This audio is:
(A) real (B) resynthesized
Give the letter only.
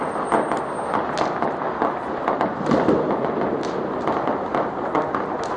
A